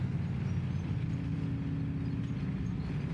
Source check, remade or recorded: recorded